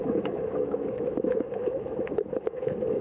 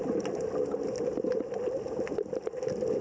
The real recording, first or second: second